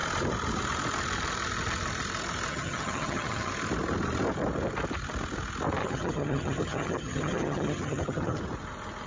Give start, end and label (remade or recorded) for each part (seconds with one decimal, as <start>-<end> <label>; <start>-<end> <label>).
0.0-2.5 recorded; 2.5-3.5 remade; 3.5-5.8 recorded; 5.8-8.4 remade; 8.4-9.1 recorded